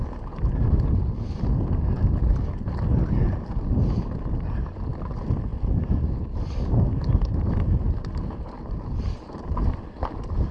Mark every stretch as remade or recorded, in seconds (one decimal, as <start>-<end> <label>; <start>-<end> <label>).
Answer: 0.0-10.5 recorded